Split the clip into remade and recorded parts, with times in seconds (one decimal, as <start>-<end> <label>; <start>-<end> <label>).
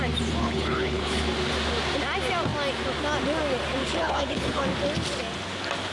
0.0-0.4 recorded; 0.4-1.2 remade; 1.2-3.8 recorded; 3.8-4.6 remade; 4.6-5.9 recorded